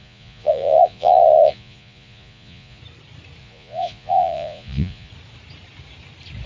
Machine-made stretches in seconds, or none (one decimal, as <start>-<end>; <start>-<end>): 0.0-2.8; 3.4-5.1

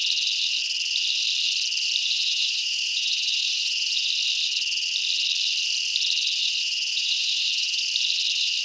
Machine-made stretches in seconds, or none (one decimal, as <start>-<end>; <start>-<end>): 2.0-4.1; 6.4-7.8

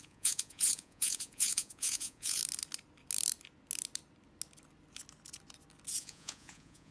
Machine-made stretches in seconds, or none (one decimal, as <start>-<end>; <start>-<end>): 0.0-2.4; 6.0-6.9